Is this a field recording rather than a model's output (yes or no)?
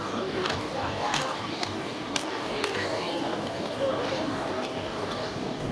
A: no